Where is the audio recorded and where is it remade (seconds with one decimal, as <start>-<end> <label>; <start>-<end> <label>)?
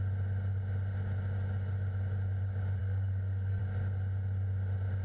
0.0-2.8 recorded; 2.8-3.6 remade; 3.6-5.0 recorded